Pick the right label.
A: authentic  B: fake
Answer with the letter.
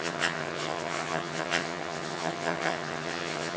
B